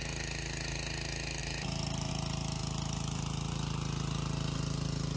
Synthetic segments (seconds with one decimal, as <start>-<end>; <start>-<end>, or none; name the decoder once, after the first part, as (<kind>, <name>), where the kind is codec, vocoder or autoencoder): 1.4-2.1 (vocoder, BigVGAN v2)